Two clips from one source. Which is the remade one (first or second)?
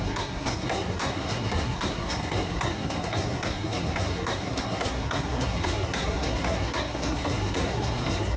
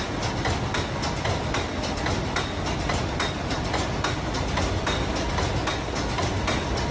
first